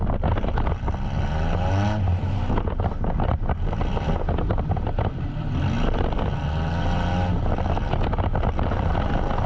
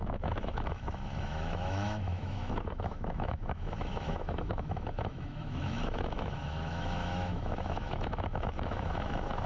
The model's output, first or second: second